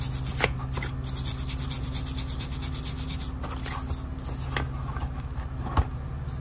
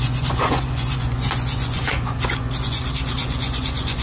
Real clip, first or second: first